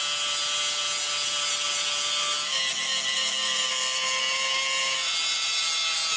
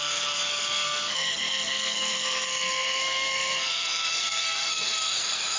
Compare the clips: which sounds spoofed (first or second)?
second